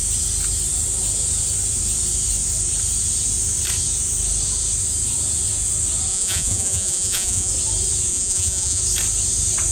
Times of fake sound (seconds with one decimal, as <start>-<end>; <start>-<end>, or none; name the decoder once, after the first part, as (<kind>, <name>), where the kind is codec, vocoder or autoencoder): 6.1-7.5 (vocoder, Vocos); 8.1-8.8